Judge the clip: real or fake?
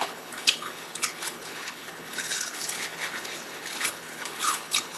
fake